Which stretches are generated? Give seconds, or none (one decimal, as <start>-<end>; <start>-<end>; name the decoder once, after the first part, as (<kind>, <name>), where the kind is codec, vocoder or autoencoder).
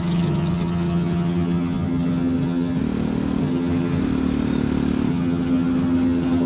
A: 0.0-2.8 (vocoder, HiFi-GAN); 3.4-4.0; 5.1-6.5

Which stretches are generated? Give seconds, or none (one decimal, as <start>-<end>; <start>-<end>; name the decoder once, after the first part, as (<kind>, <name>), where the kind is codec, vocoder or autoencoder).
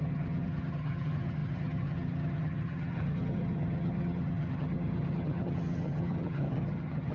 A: 0.0-7.1 (vocoder, HiFi-GAN)